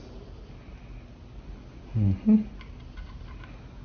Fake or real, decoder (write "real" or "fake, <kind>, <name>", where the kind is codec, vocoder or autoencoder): real